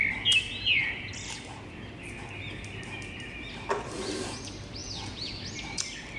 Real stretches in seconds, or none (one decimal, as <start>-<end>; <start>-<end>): 0.0-4.8; 5.3-6.2